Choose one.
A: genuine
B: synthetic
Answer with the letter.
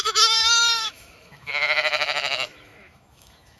B